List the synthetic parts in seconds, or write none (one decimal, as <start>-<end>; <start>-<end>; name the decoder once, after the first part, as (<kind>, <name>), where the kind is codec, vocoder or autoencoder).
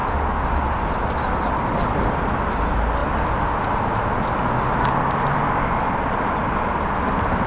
none